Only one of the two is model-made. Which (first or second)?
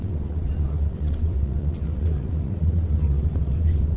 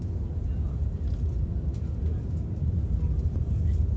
first